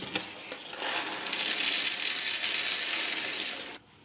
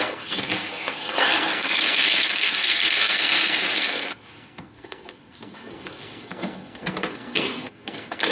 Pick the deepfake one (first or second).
second